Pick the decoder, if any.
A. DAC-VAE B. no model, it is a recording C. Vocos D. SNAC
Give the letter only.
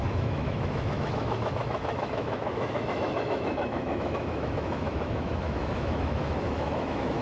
A